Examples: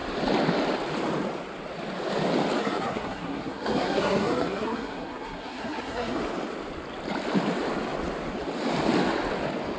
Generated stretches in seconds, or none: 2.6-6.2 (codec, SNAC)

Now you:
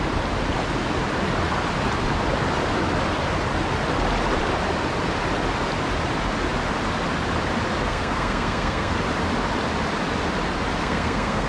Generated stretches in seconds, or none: 7.9-8.9 (codec, SNAC); 10.8-11.5